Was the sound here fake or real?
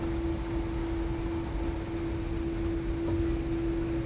real